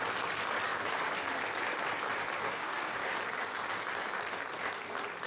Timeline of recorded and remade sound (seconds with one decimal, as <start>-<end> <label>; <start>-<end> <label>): 0.0-2.4 recorded; 2.4-3.1 remade; 3.1-5.3 recorded